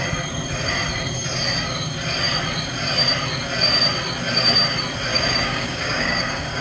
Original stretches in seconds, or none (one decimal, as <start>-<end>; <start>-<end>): 0.0-5.1